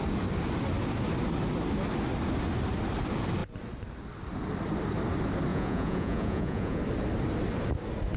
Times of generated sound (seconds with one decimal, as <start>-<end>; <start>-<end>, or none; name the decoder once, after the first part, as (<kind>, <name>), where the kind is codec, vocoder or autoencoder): 5.5-6.8 (vocoder, Vocos)

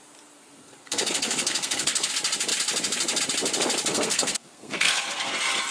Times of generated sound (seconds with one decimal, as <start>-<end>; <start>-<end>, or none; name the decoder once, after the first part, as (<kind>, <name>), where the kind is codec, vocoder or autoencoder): 0.8-2.1 (codec, SNAC); 3.9-5.3